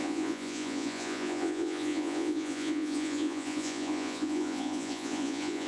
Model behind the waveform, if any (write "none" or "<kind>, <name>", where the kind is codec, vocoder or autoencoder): vocoder, Vocos